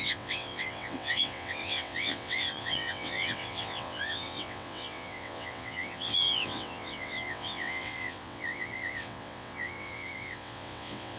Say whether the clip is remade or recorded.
remade